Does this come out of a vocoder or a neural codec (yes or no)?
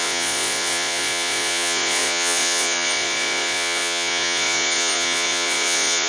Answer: yes